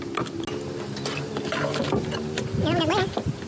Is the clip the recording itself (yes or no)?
yes